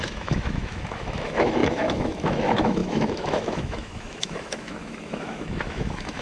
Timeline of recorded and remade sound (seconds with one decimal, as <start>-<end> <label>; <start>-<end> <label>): 0.0-6.2 remade